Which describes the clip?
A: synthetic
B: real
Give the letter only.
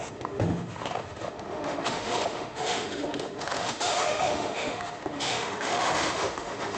A